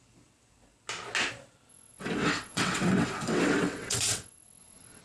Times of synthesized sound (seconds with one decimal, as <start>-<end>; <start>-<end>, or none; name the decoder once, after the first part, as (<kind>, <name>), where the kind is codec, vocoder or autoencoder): 1.7-5.0 (vocoder, WaveNeXt)